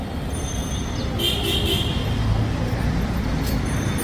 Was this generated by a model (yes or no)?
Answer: no